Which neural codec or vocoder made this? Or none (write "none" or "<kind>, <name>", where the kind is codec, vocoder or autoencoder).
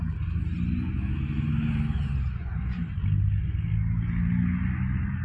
none